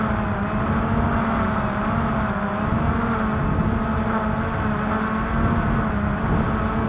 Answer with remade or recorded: recorded